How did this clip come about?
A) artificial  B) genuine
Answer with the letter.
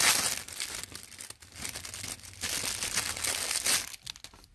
B